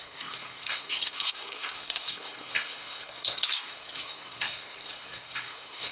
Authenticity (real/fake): fake